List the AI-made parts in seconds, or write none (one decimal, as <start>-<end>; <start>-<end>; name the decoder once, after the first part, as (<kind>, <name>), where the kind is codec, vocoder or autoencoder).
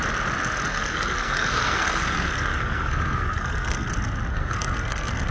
0.7-3.9 (codec, SNAC); 4.3-5.3